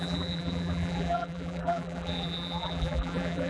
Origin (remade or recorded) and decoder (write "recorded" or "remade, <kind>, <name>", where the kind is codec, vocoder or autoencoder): remade, vocoder, BigVGAN v2